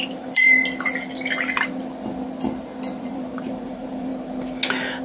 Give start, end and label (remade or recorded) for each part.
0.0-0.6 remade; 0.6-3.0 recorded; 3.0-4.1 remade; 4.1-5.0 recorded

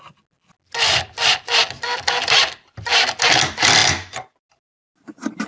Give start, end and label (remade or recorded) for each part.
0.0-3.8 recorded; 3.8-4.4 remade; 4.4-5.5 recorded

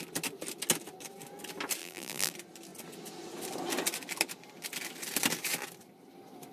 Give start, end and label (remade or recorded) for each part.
0.0-1.8 recorded; 1.8-2.3 remade; 2.3-6.5 recorded